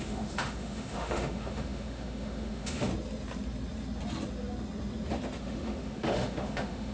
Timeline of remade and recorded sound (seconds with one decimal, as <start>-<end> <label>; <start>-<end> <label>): 0.0-2.9 remade; 2.9-5.4 recorded; 5.4-6.9 remade